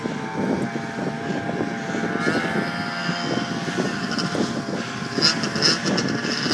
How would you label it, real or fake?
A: real